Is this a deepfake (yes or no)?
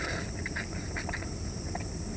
yes